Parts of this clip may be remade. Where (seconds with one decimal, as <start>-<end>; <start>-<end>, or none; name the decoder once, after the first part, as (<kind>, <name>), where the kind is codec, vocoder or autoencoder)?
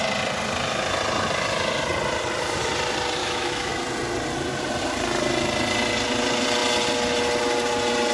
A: 3.2-3.7 (autoencoder, DAC-VAE)